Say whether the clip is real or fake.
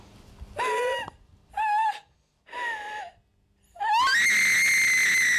real